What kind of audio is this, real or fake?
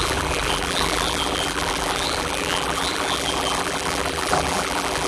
fake